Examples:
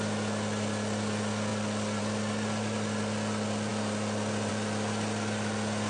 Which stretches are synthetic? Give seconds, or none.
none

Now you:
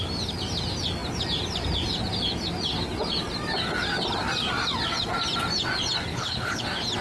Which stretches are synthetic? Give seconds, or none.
6.1-6.6